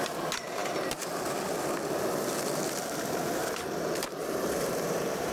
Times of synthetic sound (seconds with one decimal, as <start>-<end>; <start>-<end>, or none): 4.2-5.3